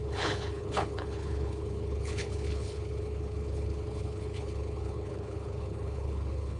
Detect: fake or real fake